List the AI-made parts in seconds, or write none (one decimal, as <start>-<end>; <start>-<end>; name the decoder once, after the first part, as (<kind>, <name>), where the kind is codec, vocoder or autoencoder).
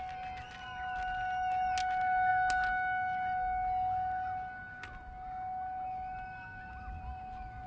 none